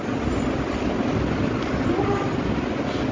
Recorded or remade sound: recorded